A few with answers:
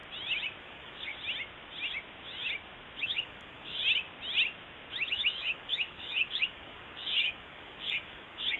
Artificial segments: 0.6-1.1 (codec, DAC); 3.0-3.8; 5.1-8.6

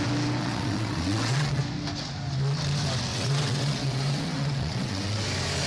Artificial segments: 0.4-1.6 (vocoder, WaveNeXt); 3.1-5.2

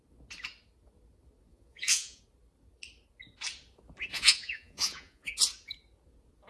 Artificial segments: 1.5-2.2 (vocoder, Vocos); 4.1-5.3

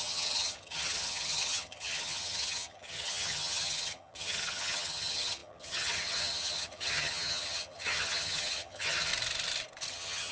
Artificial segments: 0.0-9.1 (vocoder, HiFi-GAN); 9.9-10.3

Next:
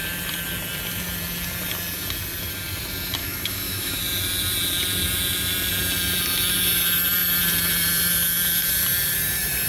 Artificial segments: 3.2-4.0 (autoencoder, DAC-VAE)

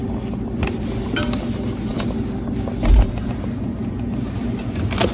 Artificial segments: none